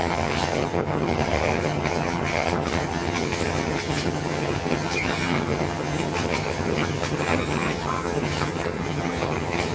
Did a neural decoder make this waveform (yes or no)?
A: yes